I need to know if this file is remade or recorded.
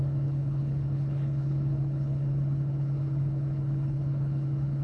remade